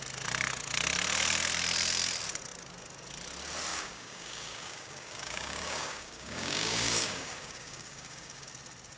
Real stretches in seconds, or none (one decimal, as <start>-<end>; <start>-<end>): 0.0-3.7; 8.5-9.0

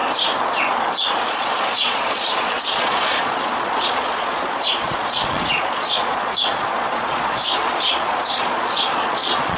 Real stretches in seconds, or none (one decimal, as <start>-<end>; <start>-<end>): 0.0-1.3

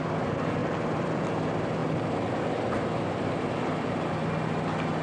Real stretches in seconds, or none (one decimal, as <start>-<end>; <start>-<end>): 0.0-5.0

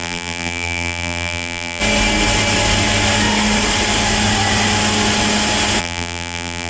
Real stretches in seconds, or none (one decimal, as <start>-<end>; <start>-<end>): 1.8-5.8

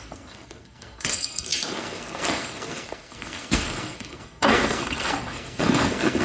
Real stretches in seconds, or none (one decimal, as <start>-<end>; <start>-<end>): none

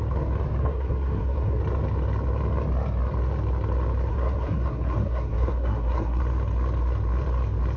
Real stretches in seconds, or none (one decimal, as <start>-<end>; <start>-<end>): 0.0-0.6; 1.6-4.1; 6.2-7.8

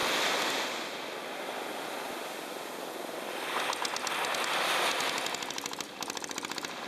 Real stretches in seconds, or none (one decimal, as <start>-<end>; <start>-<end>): 0.0-6.9